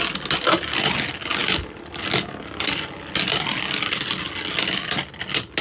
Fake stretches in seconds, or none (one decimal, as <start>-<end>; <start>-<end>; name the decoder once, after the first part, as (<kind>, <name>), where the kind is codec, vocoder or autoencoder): none